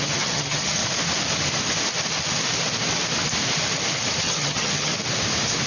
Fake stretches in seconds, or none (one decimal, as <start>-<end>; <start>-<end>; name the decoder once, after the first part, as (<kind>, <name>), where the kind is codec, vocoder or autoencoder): 0.0-0.8 (vocoder, HiFi-GAN); 4.2-4.9